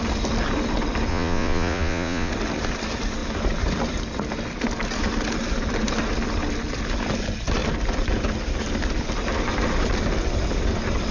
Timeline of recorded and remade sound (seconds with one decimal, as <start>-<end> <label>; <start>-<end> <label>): 0.0-1.1 recorded; 1.1-2.3 remade; 2.3-11.1 recorded